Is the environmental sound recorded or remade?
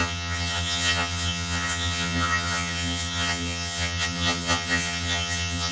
remade